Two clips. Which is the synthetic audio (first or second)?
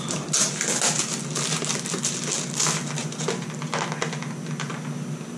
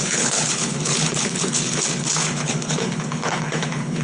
second